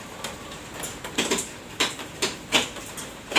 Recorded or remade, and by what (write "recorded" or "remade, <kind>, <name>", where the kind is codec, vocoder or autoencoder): remade, vocoder, BigVGAN v2